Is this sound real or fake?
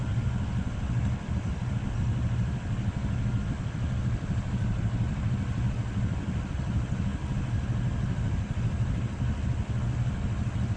real